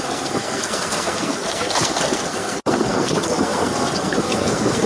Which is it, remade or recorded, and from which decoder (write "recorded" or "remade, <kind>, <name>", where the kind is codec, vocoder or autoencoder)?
remade, codec, SNAC